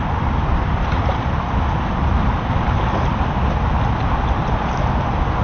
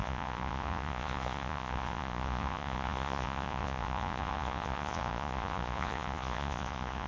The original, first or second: first